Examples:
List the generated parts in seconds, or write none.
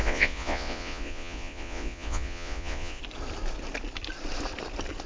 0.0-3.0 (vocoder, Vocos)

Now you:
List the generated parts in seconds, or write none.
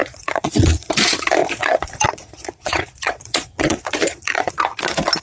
0.0-0.9 (vocoder, Vocos); 1.4-4.5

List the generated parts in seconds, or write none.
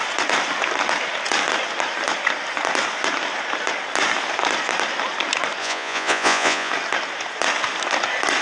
5.6-6.7 (vocoder, Vocos)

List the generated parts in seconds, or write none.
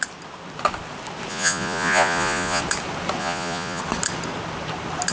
1.3-2.6 (vocoder, Vocos); 3.2-3.8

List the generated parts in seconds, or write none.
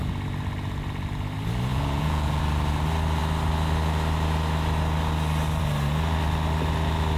1.7-2.4 (vocoder, Vocos)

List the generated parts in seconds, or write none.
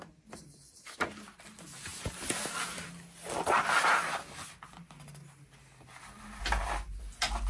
none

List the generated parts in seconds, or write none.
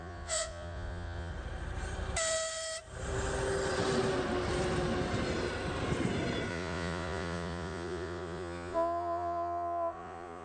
0.0-1.3 (vocoder, Vocos); 6.5-10.4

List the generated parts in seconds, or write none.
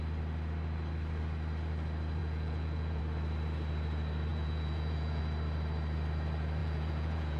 2.2-3.0 (vocoder, Vocos); 4.3-5.2; 6.6-7.4